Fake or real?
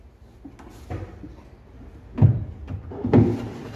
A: real